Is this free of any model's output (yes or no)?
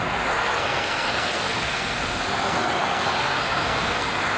no